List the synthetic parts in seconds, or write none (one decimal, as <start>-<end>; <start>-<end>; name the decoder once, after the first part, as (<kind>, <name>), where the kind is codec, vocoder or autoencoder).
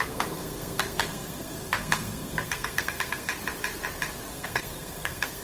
0.0-3.3 (codec, SNAC); 4.3-5.4